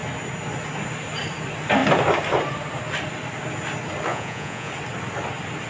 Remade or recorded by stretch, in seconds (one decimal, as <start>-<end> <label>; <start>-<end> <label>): 0.0-4.1 recorded; 4.1-4.7 remade; 4.7-5.7 recorded